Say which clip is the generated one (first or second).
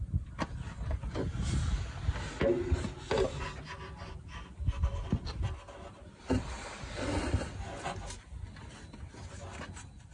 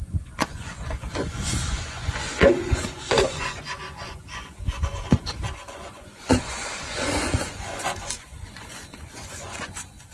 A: second